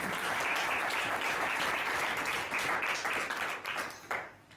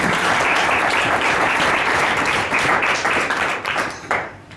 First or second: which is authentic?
first